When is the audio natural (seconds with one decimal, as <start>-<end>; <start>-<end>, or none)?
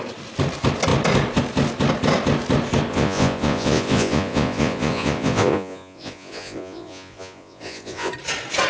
0.0-2.9; 8.1-8.7